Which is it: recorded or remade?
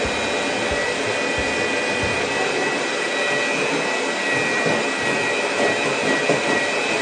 recorded